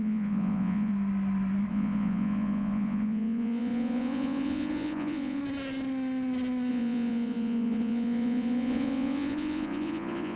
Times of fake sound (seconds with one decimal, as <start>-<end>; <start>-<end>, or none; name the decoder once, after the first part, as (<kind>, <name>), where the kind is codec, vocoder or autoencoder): 0.0-0.9 (vocoder, Vocos); 1.7-5.4; 6.7-10.4